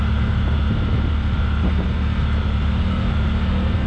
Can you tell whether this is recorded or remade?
recorded